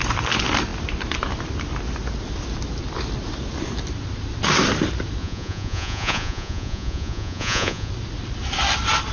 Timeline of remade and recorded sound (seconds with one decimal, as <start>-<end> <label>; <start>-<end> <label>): 0.0-5.2 recorded; 5.2-7.9 remade; 7.9-9.1 recorded